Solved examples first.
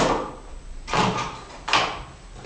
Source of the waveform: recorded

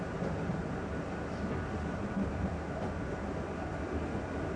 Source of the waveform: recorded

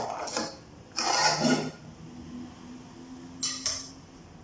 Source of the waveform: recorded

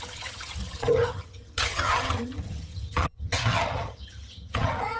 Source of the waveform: remade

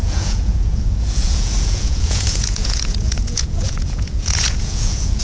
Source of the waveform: remade